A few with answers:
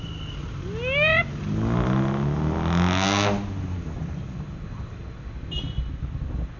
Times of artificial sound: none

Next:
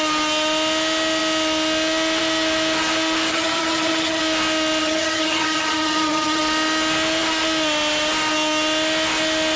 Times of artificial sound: 3.3-4.2 (vocoder, HiFi-GAN); 4.8-6.4

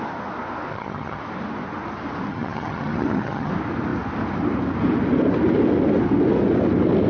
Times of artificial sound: 0.7-1.2 (vocoder, HiFi-GAN); 2.3-3.5

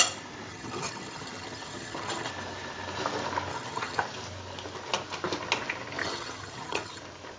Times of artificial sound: 0.5-2.3 (vocoder, HiFi-GAN); 3.5-4.0; 6.0-7.0

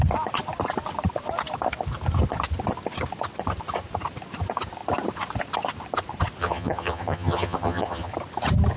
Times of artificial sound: 6.4-8.1 (vocoder, HiFi-GAN)